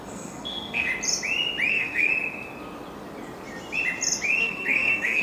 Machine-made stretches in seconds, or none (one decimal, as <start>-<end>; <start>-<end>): 0.0-0.9; 1.7-2.1; 4.4-5.2